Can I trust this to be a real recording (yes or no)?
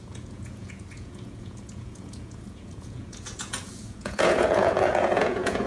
no